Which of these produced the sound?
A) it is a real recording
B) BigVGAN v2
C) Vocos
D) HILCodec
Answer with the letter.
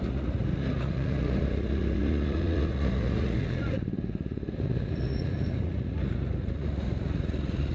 C